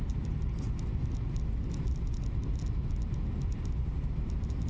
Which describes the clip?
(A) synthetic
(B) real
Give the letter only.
B